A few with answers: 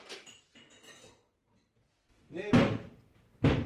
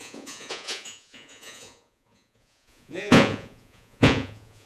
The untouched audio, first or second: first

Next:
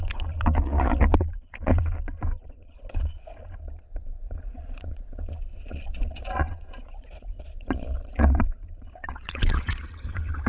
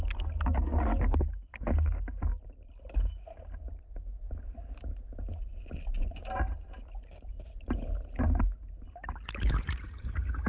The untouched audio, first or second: second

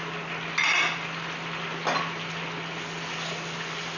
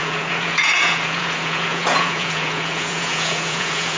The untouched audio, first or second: first